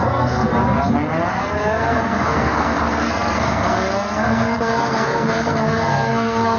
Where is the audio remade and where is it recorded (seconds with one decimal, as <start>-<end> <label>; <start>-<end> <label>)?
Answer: 0.0-0.5 remade; 0.5-1.3 recorded; 1.3-6.6 remade